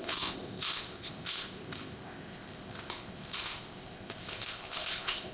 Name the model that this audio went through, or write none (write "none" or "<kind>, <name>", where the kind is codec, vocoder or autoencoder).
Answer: codec, ZipCodec